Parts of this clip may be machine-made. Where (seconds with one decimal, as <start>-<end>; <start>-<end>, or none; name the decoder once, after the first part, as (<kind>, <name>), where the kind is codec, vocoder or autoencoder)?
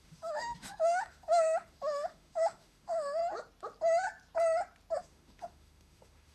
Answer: 0.0-3.2 (autoencoder, DAC-VAE); 5.0-6.3